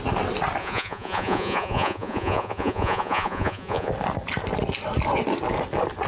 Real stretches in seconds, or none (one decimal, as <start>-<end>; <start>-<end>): 0.0-0.6; 3.9-6.1